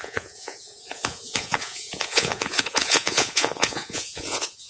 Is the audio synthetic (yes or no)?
yes